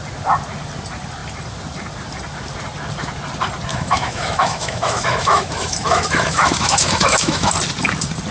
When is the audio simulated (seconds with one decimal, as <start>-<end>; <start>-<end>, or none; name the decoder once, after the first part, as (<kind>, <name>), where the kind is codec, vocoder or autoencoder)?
3.7-7.5 (autoencoder, DAC-VAE)